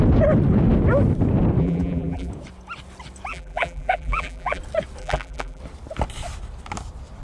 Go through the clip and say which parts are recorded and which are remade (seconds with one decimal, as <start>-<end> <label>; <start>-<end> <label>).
0.0-1.6 recorded; 1.6-2.3 remade; 2.3-3.3 recorded; 3.3-4.6 remade; 4.6-5.0 recorded; 5.0-5.6 remade; 5.6-7.2 recorded